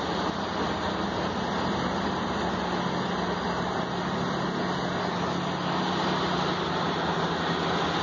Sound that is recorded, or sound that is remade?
recorded